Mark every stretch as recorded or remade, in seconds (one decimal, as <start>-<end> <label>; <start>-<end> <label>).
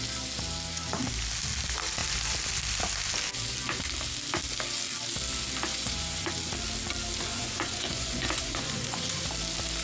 0.0-5.7 recorded; 5.7-6.3 remade; 6.3-7.3 recorded; 7.3-9.2 remade; 9.2-9.8 recorded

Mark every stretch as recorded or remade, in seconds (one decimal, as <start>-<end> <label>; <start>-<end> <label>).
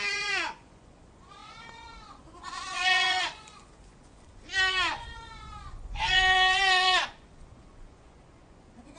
0.0-9.0 remade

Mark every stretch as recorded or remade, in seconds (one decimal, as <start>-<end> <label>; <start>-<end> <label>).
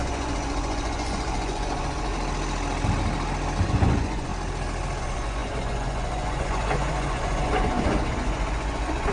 0.0-2.1 remade; 2.1-3.6 recorded; 3.6-4.3 remade; 4.3-5.0 recorded; 5.0-9.1 remade